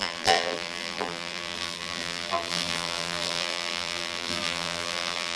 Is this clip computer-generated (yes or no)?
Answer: yes